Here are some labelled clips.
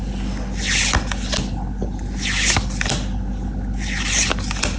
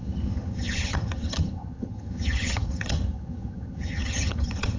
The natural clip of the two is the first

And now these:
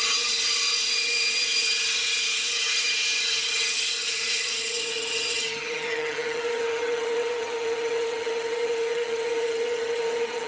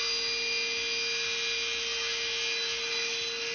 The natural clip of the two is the second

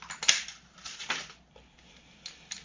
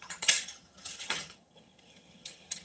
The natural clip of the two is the first